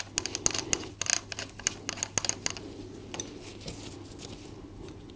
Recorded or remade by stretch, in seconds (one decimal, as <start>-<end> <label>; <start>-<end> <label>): 0.0-5.2 recorded